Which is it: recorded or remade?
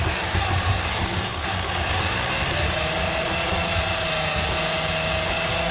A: recorded